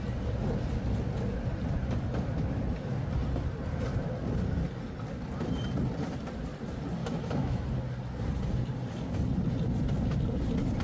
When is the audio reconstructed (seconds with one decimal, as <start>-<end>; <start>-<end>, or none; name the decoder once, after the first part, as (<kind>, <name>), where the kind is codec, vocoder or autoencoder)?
7.0-7.6 (autoencoder, DAC-VAE)